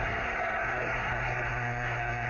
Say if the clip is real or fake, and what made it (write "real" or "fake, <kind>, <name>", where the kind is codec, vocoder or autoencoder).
fake, codec, SNAC